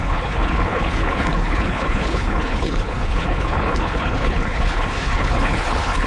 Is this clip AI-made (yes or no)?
yes